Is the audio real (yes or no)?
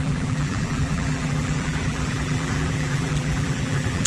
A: no